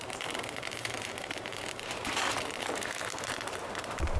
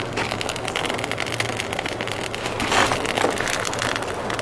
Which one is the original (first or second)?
second